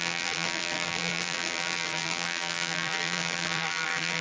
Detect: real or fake fake